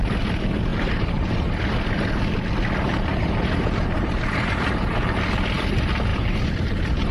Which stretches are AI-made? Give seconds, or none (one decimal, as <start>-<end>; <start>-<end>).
0.7-1.6; 3.1-5.0; 6.1-7.1